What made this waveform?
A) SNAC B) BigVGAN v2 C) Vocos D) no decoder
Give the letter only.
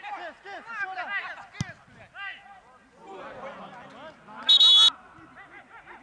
D